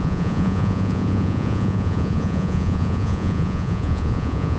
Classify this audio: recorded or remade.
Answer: remade